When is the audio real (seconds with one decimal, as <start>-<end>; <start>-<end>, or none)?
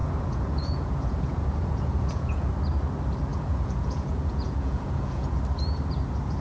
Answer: 2.5-3.3; 5.4-6.4